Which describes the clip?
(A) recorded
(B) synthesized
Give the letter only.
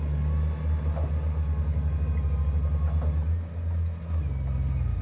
A